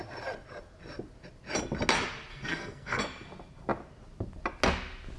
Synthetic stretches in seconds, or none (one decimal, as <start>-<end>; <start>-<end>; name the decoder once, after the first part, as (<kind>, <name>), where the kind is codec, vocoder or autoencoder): 2.3-3.0 (codec, SNAC)